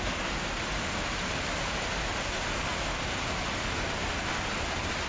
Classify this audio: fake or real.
real